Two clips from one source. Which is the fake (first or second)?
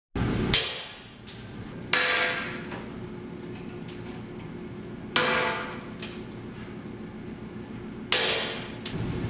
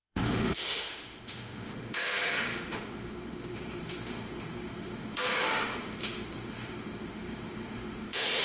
second